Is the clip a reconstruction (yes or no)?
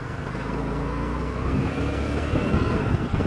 yes